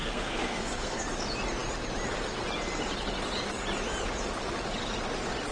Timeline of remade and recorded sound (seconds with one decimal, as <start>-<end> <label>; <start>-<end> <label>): 0.0-1.0 remade; 1.0-5.5 recorded